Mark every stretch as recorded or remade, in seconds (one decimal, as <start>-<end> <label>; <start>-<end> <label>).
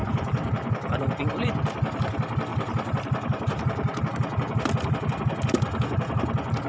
0.0-1.0 remade; 1.0-2.5 recorded; 2.5-4.1 remade; 4.1-6.7 recorded